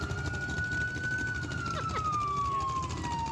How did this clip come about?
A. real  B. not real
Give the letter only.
A